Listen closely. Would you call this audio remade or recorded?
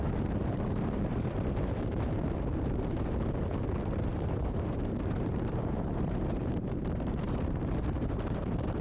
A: remade